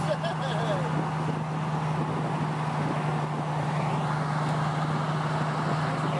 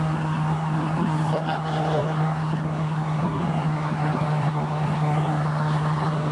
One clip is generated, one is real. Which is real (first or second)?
first